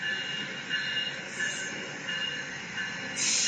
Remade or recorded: remade